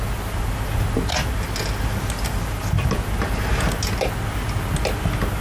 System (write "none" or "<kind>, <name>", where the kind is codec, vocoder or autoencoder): none